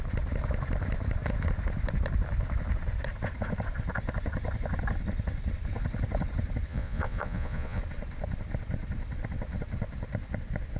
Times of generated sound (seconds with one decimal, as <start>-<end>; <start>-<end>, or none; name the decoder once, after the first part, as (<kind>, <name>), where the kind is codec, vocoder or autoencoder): 6.7-7.8 (vocoder, Vocos)